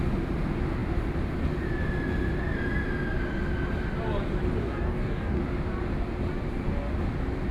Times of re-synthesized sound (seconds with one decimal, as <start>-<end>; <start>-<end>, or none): 4.6-5.4